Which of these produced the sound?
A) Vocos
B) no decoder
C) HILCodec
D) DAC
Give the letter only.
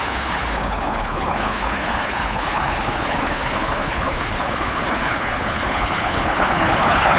C